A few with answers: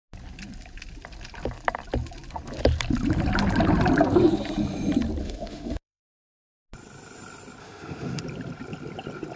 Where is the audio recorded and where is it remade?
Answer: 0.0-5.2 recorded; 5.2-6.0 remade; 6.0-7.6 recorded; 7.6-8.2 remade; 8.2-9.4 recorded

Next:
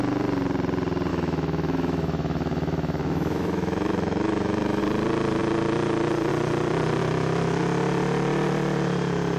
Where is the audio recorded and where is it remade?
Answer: 0.0-1.1 recorded; 1.1-4.8 remade; 4.8-7.0 recorded; 7.0-7.6 remade; 7.6-9.4 recorded

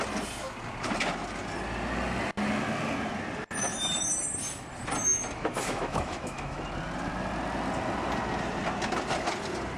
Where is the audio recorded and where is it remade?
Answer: 0.0-5.0 recorded; 5.0-6.6 remade; 6.6-9.8 recorded